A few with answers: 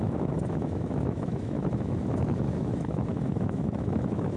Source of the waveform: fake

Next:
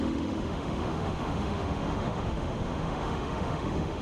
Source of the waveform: fake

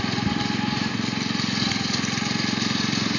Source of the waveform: real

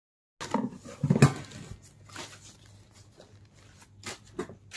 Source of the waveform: real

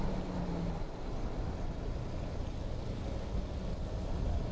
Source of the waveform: real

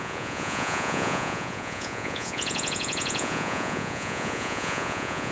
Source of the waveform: fake